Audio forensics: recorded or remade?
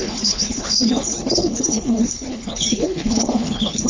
remade